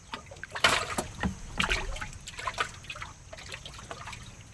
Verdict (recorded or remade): recorded